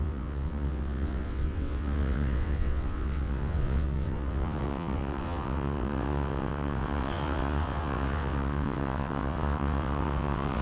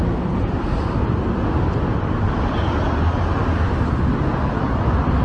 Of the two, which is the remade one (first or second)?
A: first